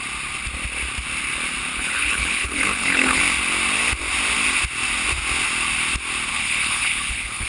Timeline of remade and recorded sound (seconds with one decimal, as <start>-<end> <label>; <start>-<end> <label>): 0.0-1.7 recorded; 1.7-3.2 remade; 3.2-6.3 recorded; 6.3-7.5 remade